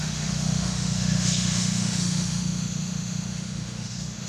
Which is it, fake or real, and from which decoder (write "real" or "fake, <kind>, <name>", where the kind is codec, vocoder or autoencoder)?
fake, autoencoder, DAC-VAE